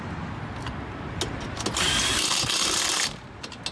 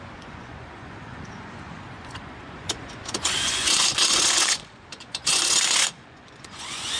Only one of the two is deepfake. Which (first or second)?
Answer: second